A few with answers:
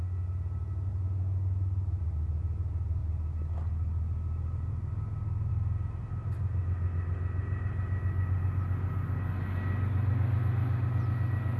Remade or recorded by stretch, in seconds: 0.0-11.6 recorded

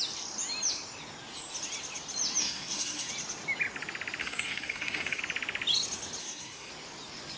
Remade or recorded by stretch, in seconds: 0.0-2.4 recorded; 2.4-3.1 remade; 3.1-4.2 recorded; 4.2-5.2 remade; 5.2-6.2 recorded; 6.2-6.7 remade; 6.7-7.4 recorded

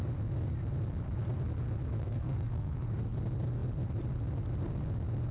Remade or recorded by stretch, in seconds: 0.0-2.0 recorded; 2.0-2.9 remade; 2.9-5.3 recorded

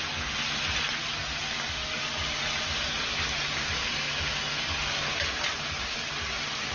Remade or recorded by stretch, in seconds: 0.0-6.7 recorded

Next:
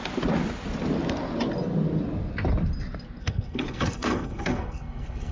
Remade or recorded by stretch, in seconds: 0.0-3.2 recorded; 3.2-5.3 remade

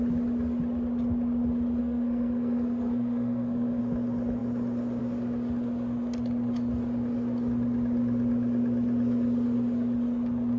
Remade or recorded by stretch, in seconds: 0.0-1.8 recorded; 1.8-3.8 remade; 3.8-10.6 recorded